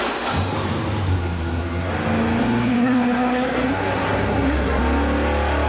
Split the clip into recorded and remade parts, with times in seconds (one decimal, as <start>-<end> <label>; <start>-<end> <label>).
0.0-1.1 recorded; 1.1-1.9 remade; 1.9-2.4 recorded; 2.4-4.8 remade; 4.8-5.7 recorded